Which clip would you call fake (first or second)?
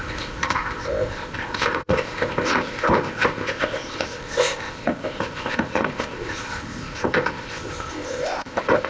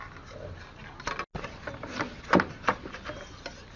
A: first